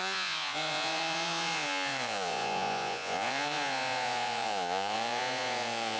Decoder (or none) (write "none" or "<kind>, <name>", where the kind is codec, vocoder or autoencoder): vocoder, Vocos